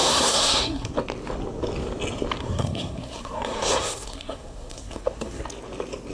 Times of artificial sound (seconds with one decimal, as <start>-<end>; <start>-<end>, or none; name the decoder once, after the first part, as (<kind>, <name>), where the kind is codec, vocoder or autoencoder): 0.0-0.9 (codec, SNAC); 2.4-5.4